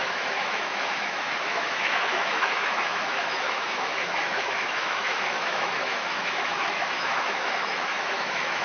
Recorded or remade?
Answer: remade